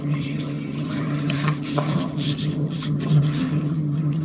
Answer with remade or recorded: remade